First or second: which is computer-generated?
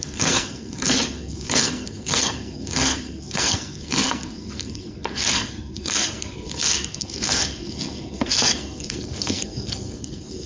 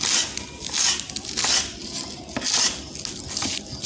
first